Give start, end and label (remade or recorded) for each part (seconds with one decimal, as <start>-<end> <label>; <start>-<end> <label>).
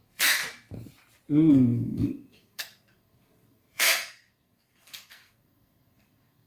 0.0-0.4 remade; 0.4-1.5 recorded; 1.5-6.5 remade